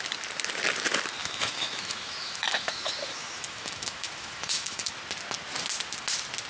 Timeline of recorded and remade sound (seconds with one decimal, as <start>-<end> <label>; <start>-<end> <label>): 0.0-1.2 recorded; 1.2-4.9 remade; 4.9-6.5 recorded